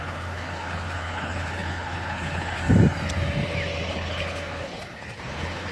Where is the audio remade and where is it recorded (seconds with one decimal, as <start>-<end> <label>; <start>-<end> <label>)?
0.0-2.6 remade; 2.6-3.9 recorded; 3.9-5.7 remade